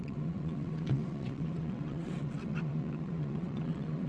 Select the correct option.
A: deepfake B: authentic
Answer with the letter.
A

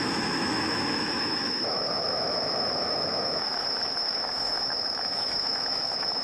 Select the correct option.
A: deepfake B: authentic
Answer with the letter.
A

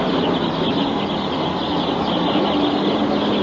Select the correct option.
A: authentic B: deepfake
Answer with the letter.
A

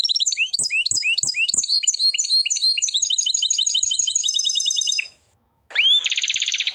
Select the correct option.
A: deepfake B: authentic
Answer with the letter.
A